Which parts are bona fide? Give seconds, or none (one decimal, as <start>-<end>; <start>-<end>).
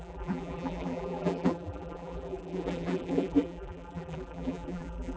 none